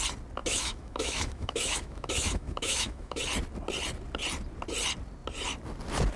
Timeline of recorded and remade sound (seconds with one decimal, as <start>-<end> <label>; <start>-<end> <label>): 0.0-0.4 recorded; 0.4-3.2 remade; 3.2-6.2 recorded